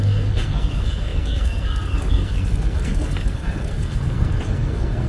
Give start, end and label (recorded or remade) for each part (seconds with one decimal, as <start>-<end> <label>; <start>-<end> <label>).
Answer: 0.0-5.1 remade